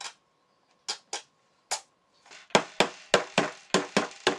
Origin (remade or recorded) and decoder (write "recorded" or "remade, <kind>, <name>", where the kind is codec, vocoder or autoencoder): recorded